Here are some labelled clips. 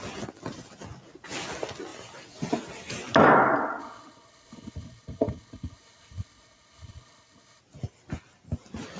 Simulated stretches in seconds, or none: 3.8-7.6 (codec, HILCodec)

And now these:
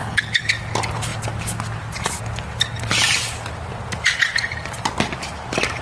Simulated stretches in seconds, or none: 0.0-0.5 (codec, HILCodec)

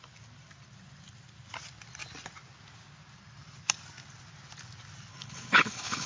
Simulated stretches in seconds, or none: 5.1-6.1 (codec, HILCodec)

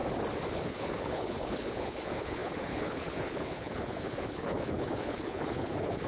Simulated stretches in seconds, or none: 0.5-6.1 (codec, HILCodec)

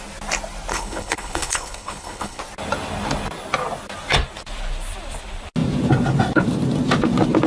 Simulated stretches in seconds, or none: 0.7-2.4 (codec, HILCodec)

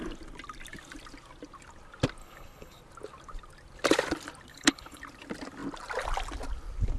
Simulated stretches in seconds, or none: 2.2-2.8 (codec, HILCodec); 4.5-5.0